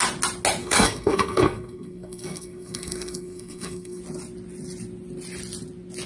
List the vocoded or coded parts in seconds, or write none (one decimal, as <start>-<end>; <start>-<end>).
0.6-4.0